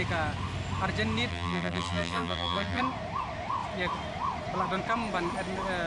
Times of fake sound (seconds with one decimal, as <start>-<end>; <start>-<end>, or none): 1.3-2.8